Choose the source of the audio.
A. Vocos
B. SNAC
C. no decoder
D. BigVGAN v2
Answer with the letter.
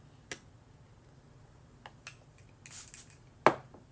C